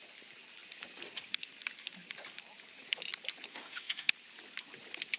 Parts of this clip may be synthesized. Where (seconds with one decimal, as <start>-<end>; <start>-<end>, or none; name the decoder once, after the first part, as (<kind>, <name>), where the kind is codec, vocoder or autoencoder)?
3.5-4.1 (autoencoder, DAC-VAE)